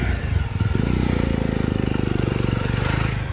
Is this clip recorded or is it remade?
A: remade